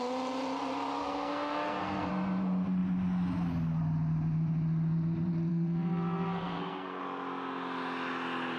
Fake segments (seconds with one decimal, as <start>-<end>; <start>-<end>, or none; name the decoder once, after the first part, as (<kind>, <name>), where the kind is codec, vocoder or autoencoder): 1.0-2.1 (codec, SNAC); 5.5-7.0